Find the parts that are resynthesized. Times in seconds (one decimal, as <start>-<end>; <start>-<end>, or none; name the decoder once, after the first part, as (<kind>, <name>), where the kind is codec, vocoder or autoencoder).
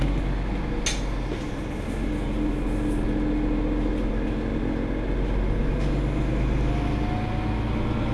none